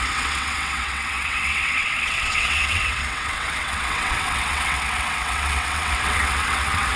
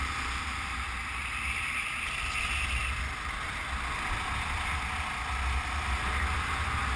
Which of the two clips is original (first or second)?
second